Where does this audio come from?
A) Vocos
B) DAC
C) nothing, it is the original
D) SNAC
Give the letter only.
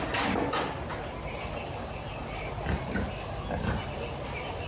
C